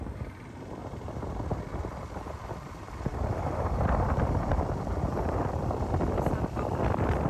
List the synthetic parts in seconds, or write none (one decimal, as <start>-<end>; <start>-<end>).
3.1-5.3